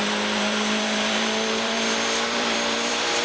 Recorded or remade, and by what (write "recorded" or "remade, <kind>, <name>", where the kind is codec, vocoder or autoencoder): remade, vocoder, BigVGAN v2